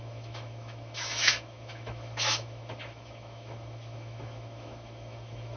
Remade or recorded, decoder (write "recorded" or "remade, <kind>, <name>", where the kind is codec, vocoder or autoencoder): remade, autoencoder, DAC-VAE